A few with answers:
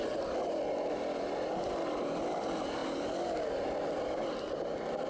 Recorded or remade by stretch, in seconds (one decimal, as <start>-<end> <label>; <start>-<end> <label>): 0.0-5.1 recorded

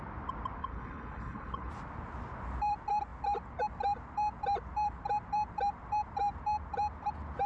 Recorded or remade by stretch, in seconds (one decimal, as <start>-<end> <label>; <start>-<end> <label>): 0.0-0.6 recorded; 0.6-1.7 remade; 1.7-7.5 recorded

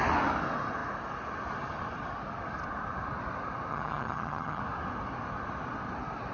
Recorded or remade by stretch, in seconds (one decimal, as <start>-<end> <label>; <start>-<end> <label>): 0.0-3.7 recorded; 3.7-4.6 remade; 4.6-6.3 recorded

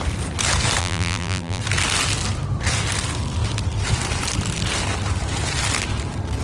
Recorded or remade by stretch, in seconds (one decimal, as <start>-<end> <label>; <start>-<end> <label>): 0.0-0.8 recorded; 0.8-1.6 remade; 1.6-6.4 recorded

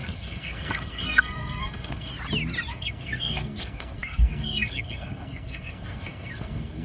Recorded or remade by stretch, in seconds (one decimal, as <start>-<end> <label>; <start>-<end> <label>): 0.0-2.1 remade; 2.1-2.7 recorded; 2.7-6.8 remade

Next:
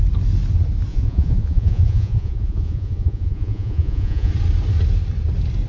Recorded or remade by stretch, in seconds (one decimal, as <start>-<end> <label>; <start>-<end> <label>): 0.0-0.9 recorded; 0.9-4.3 remade; 4.3-5.7 recorded